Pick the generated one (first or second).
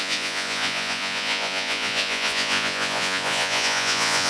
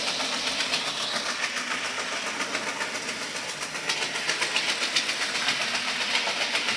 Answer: first